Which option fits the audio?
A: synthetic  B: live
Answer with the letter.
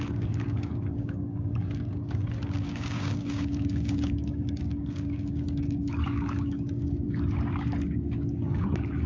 A